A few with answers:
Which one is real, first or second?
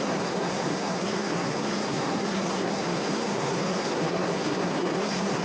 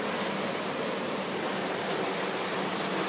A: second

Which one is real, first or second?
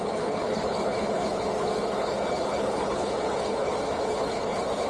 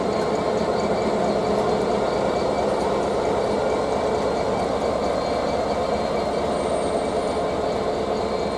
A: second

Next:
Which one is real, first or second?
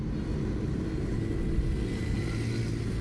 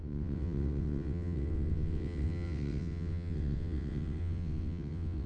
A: first